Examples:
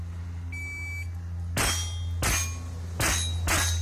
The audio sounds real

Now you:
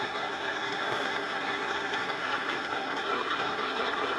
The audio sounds fake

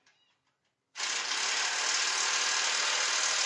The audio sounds real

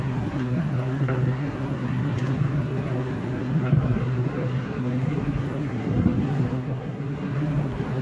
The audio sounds fake